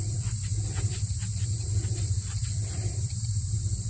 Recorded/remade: remade